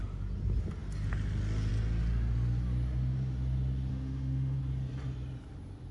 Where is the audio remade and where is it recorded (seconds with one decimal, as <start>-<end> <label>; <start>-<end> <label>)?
0.0-3.9 recorded; 3.9-4.6 remade; 4.6-5.9 recorded